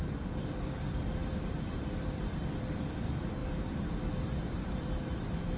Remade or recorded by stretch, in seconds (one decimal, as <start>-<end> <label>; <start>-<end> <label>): 0.0-5.6 remade